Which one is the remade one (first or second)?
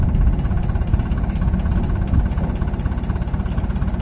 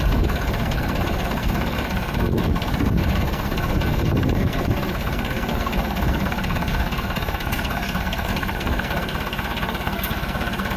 second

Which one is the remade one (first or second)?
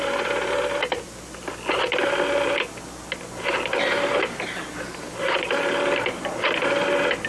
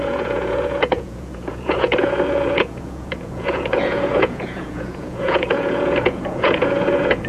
second